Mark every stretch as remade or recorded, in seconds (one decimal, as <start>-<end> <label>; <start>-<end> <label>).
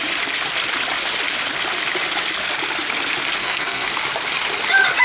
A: 0.0-3.4 recorded; 3.4-3.9 remade; 3.9-5.0 recorded